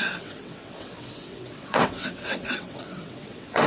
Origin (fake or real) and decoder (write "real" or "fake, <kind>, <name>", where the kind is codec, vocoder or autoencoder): fake, vocoder, WaveNeXt